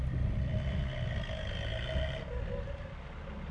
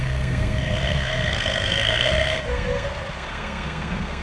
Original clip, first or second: first